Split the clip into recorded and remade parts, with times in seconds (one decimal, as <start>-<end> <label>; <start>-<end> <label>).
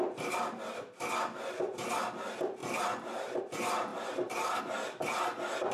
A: 0.0-2.6 recorded; 2.6-3.4 remade; 3.4-3.9 recorded; 3.9-4.6 remade; 4.6-5.7 recorded